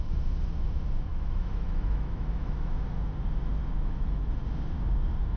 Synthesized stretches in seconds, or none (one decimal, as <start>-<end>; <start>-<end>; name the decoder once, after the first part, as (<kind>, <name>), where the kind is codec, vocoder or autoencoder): 1.1-2.7 (autoencoder, DAC-VAE); 3.6-4.4